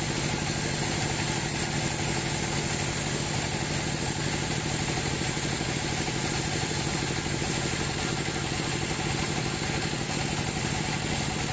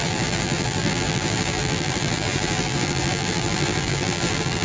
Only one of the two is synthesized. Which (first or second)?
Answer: second